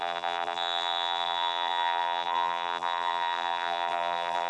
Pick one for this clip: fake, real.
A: fake